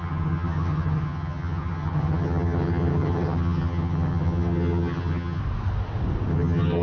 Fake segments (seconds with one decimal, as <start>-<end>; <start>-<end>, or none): 0.0-5.4; 6.3-6.8

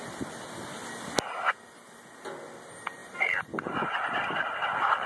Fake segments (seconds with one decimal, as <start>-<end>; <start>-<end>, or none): none

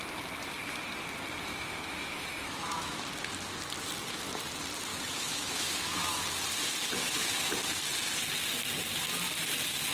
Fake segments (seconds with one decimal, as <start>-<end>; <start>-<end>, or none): 1.5-3.0; 4.9-6.2; 7.0-7.5

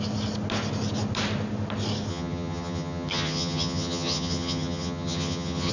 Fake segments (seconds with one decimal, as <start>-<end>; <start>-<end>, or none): 2.1-5.7

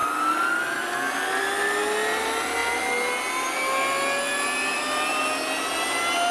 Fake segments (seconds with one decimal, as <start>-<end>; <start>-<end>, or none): 4.6-5.2